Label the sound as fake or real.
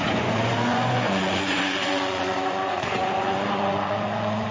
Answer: fake